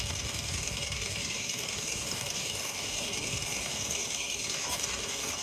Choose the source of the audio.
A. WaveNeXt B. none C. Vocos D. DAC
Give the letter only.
D